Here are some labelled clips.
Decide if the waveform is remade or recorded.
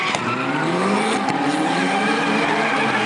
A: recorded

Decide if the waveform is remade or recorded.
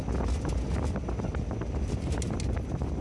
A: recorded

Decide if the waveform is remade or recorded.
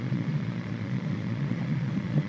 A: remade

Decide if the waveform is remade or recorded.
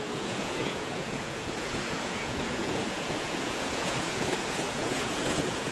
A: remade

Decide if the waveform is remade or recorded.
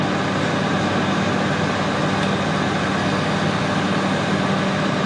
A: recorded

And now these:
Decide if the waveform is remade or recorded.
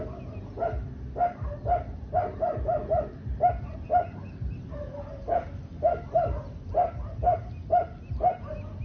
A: recorded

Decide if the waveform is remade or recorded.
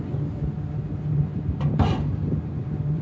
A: recorded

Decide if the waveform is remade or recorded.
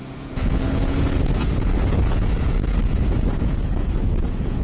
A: remade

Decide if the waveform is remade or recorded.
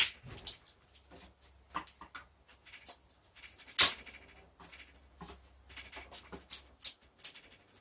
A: recorded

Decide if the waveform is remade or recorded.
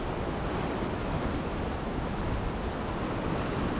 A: recorded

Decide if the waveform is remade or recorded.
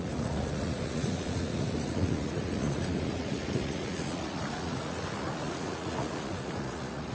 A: remade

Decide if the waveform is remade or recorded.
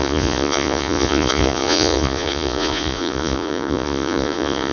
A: remade